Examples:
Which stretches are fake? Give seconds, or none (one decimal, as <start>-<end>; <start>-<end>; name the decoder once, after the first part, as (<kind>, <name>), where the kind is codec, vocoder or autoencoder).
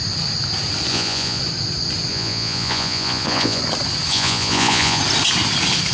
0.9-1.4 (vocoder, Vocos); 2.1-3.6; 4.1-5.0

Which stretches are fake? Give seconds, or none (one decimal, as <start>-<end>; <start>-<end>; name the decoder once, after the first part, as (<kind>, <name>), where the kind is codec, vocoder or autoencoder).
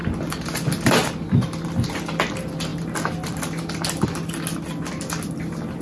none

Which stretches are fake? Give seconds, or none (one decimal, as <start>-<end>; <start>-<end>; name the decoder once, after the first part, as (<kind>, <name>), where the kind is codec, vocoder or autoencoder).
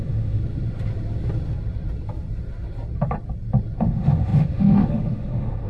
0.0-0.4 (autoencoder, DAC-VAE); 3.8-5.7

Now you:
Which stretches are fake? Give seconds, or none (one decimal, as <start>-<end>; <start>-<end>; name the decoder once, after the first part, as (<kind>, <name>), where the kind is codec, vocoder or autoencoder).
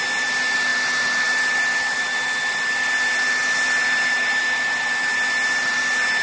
none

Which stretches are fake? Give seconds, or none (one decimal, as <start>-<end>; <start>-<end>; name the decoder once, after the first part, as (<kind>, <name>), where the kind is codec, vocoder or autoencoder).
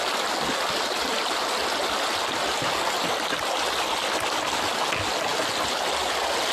none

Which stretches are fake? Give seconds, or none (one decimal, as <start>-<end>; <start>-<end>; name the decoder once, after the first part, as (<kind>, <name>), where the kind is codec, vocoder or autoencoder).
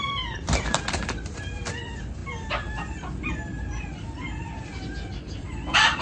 0.0-6.0 (vocoder, BigVGAN v2)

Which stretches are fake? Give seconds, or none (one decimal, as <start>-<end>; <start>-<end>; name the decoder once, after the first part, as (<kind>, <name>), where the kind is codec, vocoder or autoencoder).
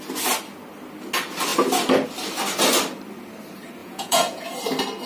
3.8-4.4 (vocoder, Vocos)